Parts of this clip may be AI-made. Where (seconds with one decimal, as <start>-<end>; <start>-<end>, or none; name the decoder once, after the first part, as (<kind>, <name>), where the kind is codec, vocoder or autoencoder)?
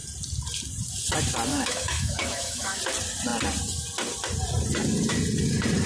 1.5-2.8 (autoencoder, DAC-VAE)